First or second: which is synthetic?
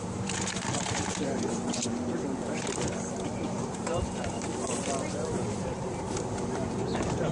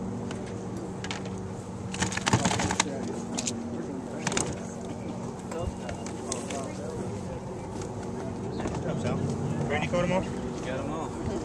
first